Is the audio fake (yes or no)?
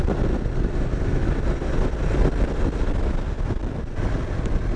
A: no